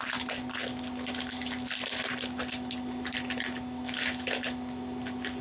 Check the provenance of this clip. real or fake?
real